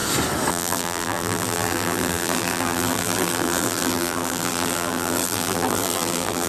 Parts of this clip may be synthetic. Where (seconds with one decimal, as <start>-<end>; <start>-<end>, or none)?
0.5-6.5